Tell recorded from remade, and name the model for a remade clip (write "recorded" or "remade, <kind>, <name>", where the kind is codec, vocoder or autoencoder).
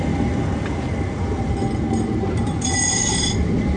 recorded